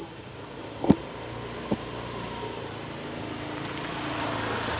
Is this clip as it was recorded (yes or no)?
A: yes